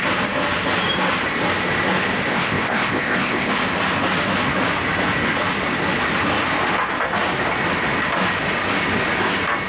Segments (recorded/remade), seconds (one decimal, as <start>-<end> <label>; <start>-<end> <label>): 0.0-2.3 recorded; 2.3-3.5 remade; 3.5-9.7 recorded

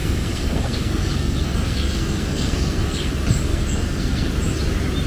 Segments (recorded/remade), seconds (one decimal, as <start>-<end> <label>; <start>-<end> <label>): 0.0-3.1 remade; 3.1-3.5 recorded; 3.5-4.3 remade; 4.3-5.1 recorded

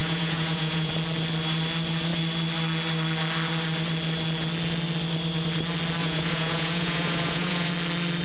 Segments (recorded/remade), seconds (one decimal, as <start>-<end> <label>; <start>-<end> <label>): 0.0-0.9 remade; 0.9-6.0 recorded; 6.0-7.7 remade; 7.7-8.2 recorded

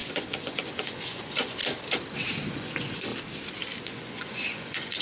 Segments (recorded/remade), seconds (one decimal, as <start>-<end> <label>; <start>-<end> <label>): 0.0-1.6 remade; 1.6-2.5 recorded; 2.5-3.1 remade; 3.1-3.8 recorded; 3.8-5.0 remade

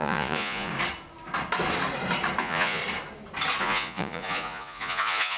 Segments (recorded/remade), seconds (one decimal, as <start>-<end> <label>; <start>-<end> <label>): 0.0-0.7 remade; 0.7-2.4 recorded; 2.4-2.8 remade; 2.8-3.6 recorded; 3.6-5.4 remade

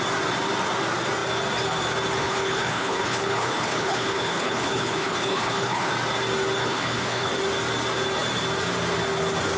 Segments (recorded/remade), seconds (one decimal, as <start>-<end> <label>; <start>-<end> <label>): 0.0-2.2 recorded; 2.2-5.9 remade; 5.9-6.6 recorded; 6.6-7.3 remade; 7.3-9.6 recorded

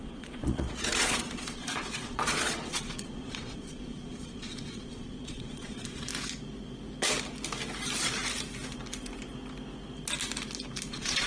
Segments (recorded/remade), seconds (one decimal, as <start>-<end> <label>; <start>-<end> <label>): 0.0-6.1 remade; 6.1-10.9 recorded; 10.9-11.3 remade